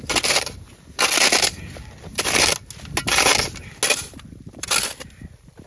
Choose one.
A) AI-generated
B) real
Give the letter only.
B